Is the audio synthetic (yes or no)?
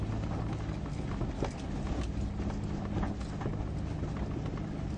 no